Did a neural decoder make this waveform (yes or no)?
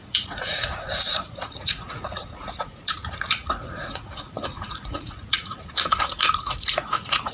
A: yes